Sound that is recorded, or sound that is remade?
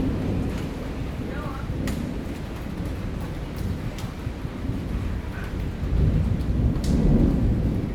recorded